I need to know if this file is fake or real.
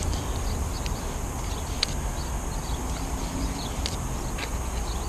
real